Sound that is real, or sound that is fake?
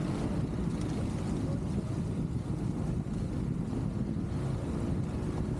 real